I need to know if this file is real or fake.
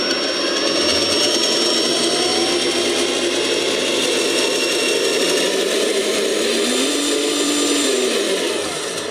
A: real